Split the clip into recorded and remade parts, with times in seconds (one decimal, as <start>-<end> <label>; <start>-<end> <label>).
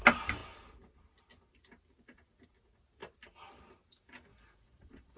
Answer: 0.0-4.3 recorded; 4.3-5.2 remade